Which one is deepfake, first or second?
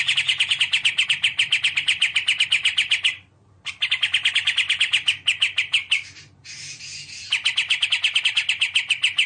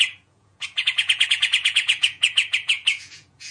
second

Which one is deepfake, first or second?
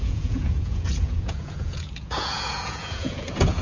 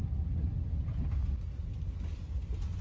first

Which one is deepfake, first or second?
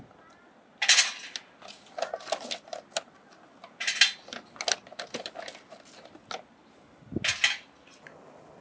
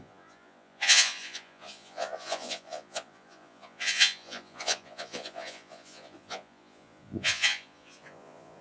second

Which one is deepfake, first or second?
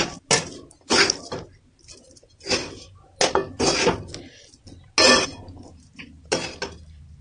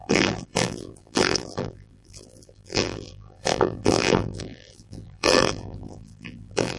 second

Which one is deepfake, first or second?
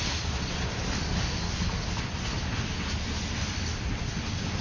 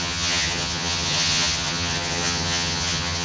second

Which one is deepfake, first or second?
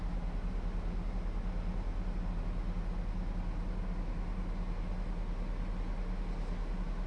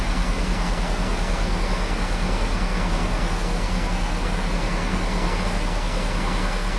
second